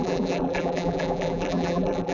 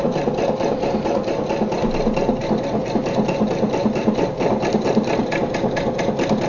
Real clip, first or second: second